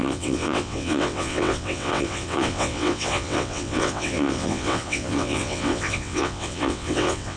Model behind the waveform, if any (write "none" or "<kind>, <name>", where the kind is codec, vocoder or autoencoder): vocoder, WaveNeXt